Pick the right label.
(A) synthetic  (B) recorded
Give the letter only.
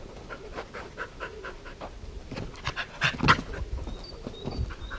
B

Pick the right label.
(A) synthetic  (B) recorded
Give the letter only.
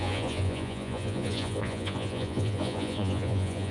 A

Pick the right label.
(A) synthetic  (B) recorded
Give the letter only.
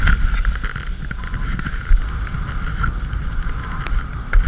B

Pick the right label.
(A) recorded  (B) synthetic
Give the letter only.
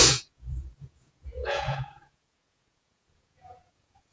B